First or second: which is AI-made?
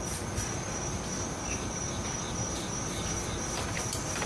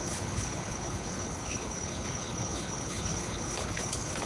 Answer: second